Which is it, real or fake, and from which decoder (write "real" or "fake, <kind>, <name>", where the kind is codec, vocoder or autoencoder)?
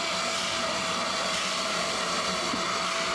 real